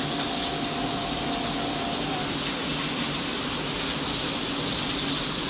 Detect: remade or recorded recorded